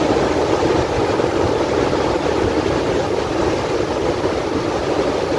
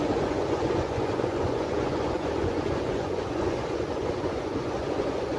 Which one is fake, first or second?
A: second